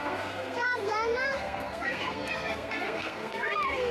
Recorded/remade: remade